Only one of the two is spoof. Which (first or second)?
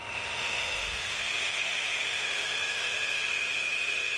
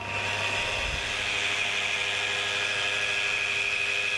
first